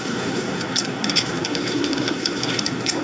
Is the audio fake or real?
fake